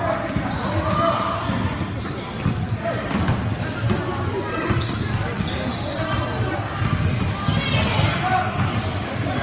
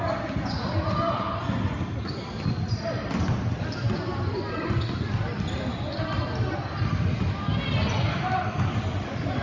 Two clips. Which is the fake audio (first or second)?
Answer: second